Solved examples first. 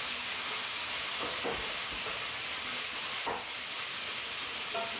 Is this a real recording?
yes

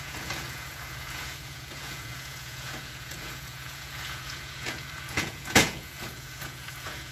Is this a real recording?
no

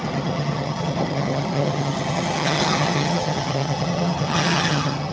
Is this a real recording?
no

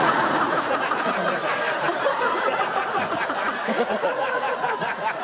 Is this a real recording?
no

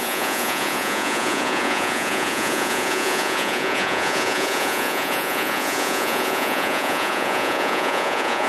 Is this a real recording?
no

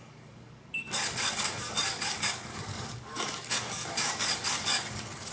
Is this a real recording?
no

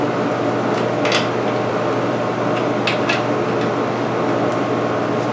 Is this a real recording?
yes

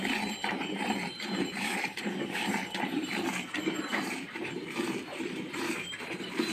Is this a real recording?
no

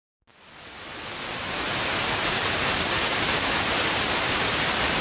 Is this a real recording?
yes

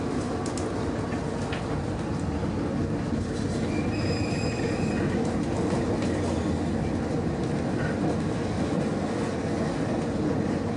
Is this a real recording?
yes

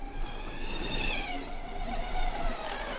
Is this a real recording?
yes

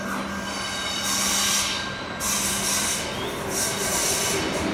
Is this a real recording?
yes